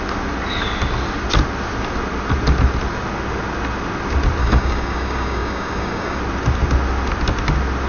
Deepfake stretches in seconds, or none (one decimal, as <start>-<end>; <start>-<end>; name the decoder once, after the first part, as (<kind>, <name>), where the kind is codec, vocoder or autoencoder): 4.4-6.2 (codec, DAC)